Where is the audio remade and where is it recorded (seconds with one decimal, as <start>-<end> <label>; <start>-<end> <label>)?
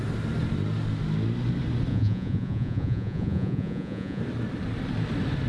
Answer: 0.0-1.9 recorded; 1.9-4.2 remade; 4.2-5.5 recorded